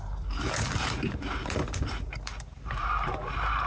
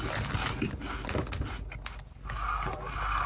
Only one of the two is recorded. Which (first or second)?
second